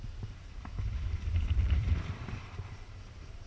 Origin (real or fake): fake